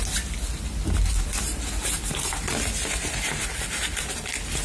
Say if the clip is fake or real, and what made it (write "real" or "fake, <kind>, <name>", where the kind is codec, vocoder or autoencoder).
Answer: real